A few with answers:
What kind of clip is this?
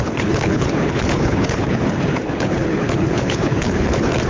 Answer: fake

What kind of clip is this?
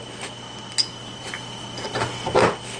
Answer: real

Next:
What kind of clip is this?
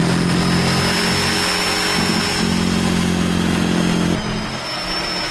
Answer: real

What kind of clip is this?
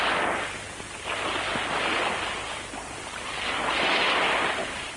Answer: real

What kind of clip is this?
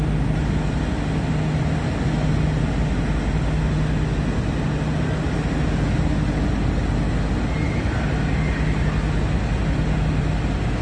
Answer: real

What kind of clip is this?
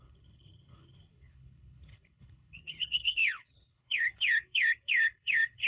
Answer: fake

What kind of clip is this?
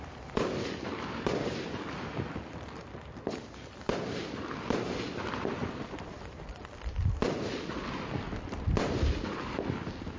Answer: real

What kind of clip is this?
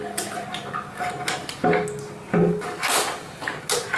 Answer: real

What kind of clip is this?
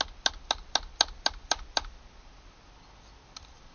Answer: real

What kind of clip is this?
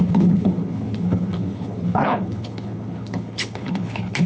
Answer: fake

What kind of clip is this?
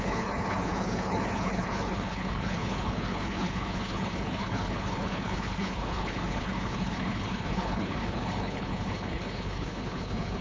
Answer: fake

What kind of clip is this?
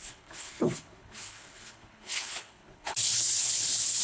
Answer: fake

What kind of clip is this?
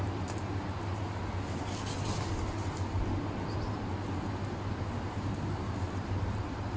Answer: real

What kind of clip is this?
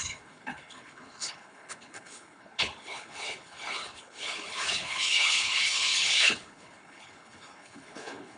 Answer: fake